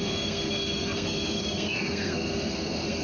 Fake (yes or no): yes